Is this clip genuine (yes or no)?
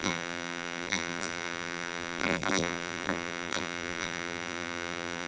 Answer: no